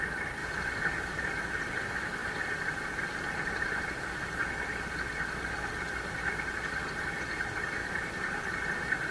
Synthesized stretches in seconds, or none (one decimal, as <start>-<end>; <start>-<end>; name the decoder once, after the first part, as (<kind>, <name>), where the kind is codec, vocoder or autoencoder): 0.4-1.2 (vocoder, BigVGAN v2)